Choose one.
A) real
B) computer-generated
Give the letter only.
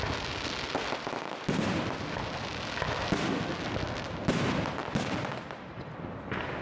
A